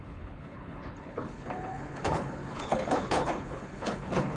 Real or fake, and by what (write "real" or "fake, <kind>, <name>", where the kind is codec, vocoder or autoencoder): fake, codec, HILCodec